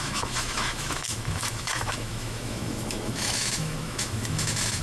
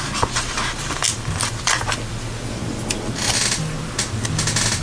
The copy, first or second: first